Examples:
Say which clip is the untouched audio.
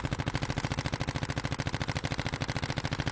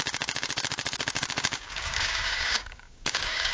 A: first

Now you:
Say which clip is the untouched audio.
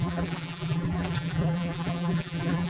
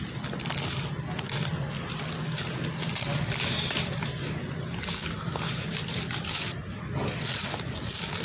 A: second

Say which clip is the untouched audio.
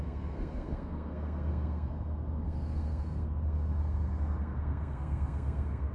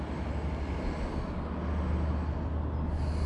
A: second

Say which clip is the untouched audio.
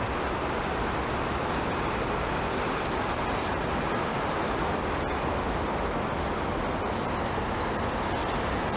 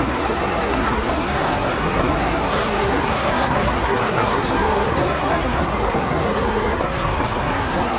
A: first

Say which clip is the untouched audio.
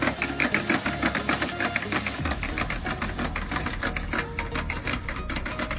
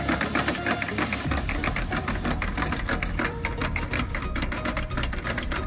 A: first